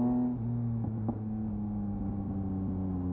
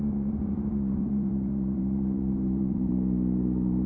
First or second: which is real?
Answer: first